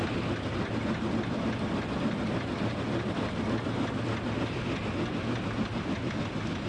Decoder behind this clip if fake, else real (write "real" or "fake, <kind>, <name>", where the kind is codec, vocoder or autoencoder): real